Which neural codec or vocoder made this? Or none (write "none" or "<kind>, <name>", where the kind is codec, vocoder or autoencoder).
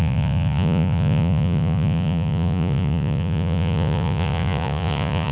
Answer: vocoder, Vocos